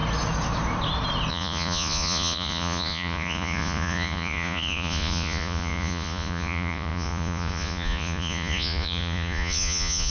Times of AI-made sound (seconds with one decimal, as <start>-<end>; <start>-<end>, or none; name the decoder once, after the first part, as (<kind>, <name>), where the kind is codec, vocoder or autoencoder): 1.3-10.1 (vocoder, Vocos)